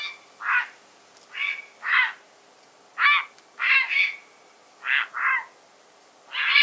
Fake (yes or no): no